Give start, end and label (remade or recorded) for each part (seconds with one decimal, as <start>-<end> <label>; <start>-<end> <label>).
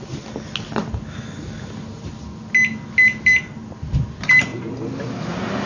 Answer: 0.0-5.7 recorded